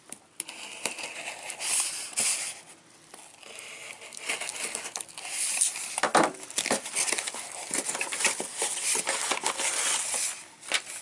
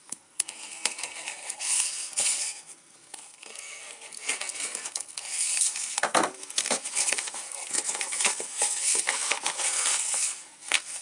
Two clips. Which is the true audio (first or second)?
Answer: first